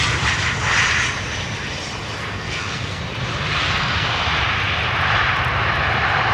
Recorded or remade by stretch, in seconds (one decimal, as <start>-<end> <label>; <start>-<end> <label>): 0.0-2.2 recorded; 2.2-3.0 remade; 3.0-3.6 recorded; 3.6-4.2 remade; 4.2-6.3 recorded

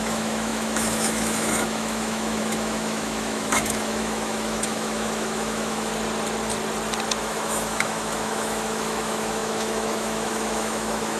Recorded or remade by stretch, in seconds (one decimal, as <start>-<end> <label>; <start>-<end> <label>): 0.0-5.9 remade; 5.9-7.2 recorded; 7.2-11.2 remade

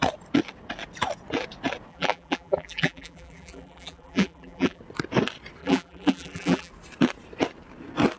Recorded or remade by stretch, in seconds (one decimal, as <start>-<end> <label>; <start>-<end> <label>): 0.0-1.9 recorded; 1.9-4.8 remade; 4.8-5.6 recorded; 5.6-6.7 remade; 6.7-8.2 recorded